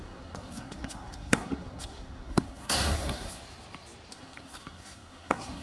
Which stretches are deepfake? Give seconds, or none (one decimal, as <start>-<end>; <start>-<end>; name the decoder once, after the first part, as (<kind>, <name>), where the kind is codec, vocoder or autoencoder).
0.0-3.4 (codec, SNAC); 4.1-5.6